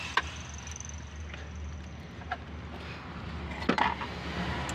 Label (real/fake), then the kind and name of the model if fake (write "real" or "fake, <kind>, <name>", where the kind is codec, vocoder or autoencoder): real